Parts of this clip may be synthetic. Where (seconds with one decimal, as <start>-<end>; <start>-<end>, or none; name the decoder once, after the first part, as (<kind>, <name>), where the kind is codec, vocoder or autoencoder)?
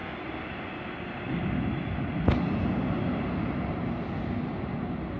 none